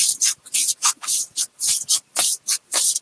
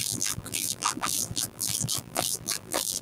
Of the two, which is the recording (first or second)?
first